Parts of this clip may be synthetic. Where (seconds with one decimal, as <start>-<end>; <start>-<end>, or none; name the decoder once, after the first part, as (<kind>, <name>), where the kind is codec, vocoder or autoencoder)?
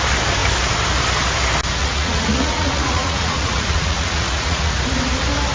1.8-4.7 (vocoder, Vocos)